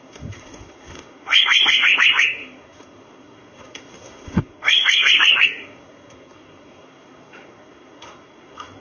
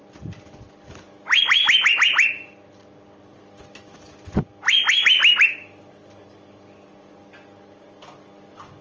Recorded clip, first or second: second